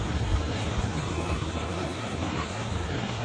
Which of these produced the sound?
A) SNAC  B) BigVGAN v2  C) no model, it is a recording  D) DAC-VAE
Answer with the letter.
A